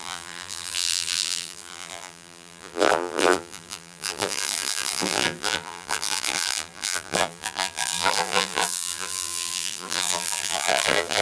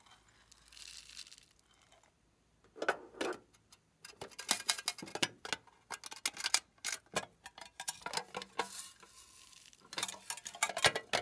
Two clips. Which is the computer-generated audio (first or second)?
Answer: first